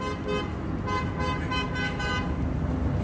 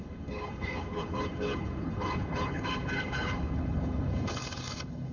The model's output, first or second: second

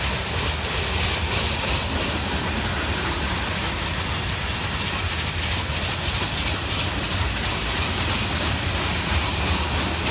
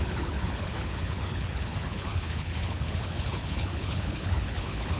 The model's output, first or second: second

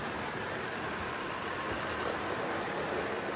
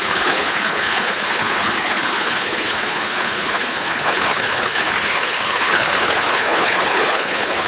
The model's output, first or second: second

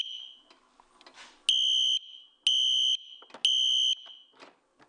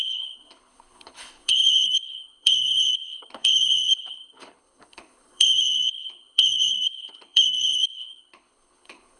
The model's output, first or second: second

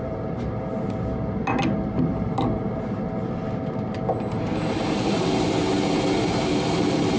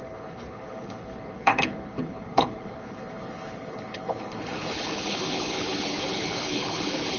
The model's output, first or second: second